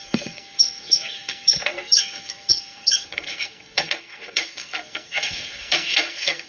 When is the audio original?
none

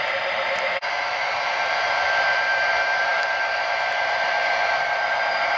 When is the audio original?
none

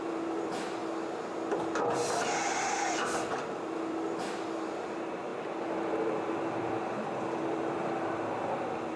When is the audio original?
0.8-1.6

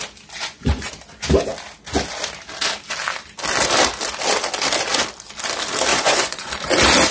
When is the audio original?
0.0-0.4; 0.9-5.9; 6.5-7.1